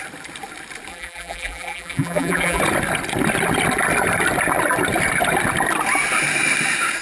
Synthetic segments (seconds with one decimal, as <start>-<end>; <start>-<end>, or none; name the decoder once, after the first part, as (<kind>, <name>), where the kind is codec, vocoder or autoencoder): 0.9-2.6 (vocoder, BigVGAN v2)